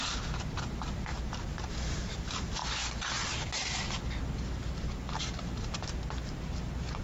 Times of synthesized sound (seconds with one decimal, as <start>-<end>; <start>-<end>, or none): 0.0-1.1; 1.7-2.6